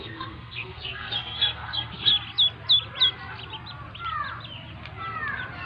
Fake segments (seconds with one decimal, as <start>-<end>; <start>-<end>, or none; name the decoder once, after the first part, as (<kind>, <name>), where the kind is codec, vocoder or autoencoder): 0.0-2.1 (codec, SNAC)

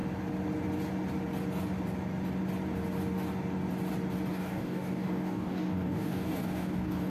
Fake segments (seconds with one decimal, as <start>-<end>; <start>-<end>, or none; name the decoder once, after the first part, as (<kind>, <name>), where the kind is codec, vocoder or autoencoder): 4.3-7.1 (codec, DAC)

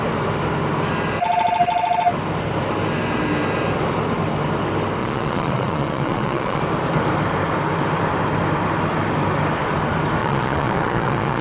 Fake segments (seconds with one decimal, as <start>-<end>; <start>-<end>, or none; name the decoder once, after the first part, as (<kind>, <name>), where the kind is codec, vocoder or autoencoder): 5.0-6.6 (vocoder, Vocos); 10.2-11.4

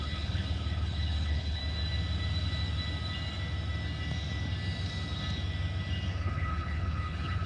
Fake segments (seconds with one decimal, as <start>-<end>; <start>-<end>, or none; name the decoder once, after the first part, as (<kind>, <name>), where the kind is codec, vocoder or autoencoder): 0.0-1.6 (codec, HILCodec); 6.1-7.5

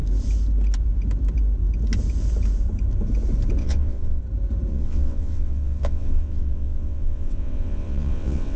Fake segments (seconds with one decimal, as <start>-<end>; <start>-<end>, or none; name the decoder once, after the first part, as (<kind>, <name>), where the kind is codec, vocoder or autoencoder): 3.6-4.2 (vocoder, WaveNeXt); 4.7-8.6

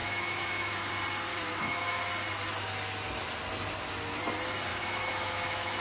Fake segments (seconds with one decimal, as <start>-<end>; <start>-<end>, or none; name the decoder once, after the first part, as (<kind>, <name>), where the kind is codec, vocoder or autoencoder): 0.0-0.9 (autoencoder, DAC-VAE); 1.3-2.1; 4.7-5.8

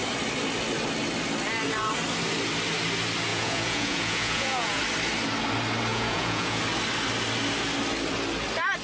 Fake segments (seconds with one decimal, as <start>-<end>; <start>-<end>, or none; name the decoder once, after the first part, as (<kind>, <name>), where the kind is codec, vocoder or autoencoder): 3.3-4.8 (vocoder, Vocos); 5.9-6.6